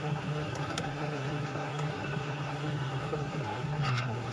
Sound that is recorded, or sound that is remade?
remade